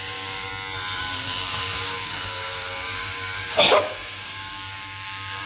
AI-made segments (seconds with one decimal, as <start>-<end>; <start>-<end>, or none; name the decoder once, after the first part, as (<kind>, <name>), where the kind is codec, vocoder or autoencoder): 0.0-0.5 (codec, DAC); 1.0-5.5